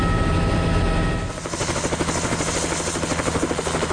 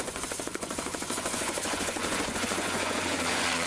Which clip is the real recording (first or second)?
first